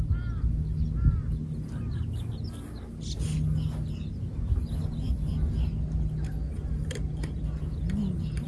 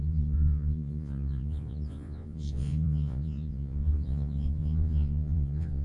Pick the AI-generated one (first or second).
second